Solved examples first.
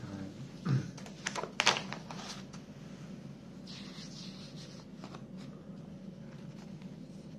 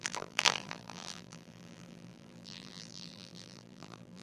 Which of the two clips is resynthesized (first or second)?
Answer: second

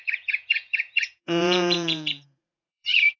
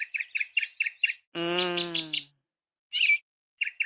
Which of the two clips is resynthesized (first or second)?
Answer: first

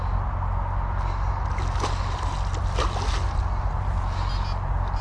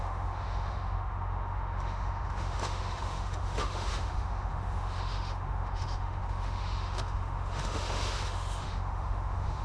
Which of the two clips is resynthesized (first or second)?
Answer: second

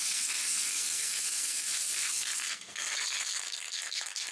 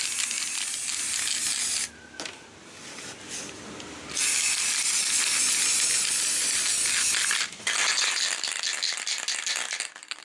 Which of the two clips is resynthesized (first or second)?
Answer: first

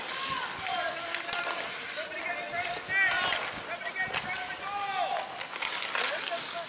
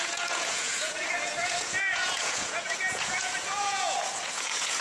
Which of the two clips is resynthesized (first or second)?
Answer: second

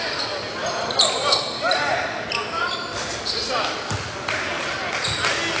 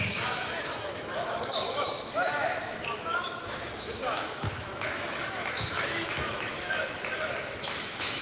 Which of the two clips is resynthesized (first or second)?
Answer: second